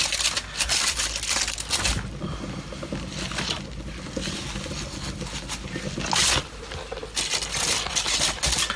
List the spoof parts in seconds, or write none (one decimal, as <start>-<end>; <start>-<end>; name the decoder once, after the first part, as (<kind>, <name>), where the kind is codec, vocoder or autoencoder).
none